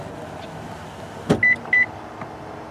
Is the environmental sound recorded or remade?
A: recorded